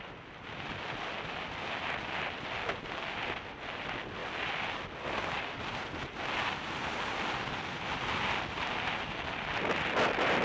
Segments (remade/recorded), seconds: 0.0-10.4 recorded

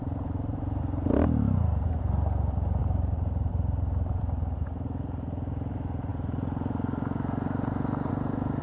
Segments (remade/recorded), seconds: 0.0-0.8 remade; 0.8-2.8 recorded; 2.8-4.2 remade; 4.2-8.6 recorded

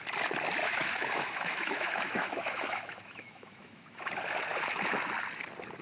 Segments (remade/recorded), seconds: 0.0-0.6 recorded; 0.6-4.1 remade; 4.1-5.8 recorded